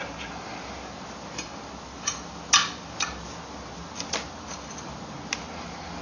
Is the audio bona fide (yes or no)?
yes